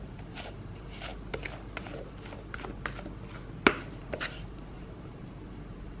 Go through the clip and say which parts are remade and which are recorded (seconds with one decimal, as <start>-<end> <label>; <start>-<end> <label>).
0.0-1.1 remade; 1.1-3.7 recorded; 3.7-6.0 remade